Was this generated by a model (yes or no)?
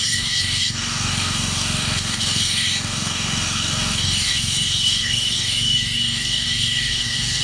yes